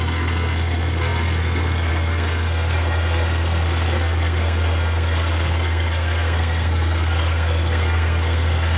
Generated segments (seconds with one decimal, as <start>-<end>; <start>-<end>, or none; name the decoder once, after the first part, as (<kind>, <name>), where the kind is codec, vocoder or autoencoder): 0.0-8.8 (codec, SNAC)